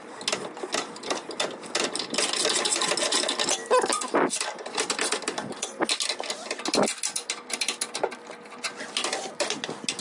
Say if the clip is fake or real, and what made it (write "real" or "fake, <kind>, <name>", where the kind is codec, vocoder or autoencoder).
real